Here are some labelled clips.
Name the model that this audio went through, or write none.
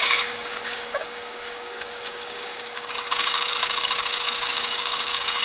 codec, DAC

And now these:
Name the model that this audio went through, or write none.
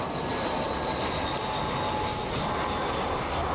none